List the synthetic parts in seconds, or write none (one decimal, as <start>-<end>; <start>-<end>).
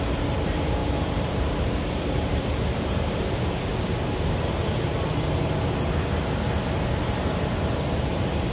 0.0-3.7; 7.7-8.5